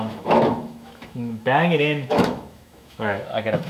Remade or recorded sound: remade